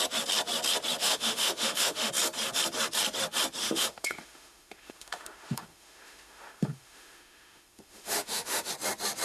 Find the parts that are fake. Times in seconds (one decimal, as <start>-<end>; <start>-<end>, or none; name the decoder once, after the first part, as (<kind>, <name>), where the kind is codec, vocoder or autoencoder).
1.0-2.1 (autoencoder, DAC-VAE); 3.6-8.7